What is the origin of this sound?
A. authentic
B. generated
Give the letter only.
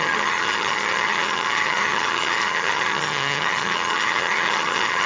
B